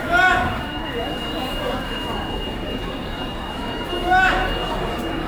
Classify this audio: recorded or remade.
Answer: remade